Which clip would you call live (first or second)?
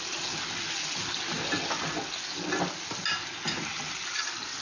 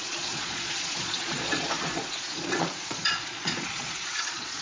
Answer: first